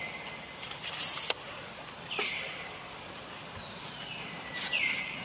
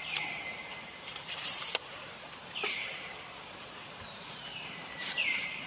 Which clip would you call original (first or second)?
first